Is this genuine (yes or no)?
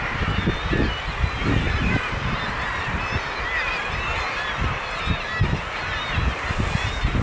yes